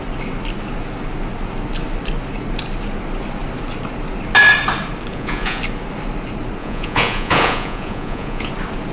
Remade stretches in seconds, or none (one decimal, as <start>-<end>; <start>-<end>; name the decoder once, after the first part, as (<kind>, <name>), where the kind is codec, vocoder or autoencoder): 5.1-5.6 (vocoder, Vocos); 6.6-8.5